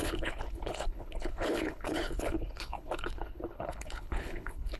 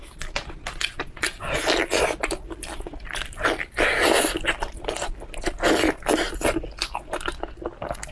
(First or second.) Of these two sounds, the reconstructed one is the first